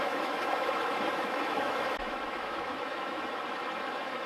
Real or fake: fake